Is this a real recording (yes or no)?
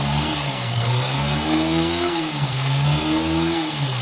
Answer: no